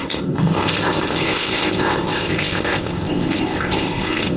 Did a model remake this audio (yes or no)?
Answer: yes